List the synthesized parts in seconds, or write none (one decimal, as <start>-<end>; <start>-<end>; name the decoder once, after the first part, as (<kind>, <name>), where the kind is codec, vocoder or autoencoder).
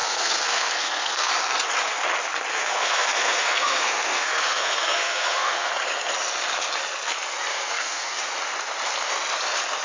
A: 0.0-1.3 (codec, SNAC); 2.5-5.7; 7.5-8.2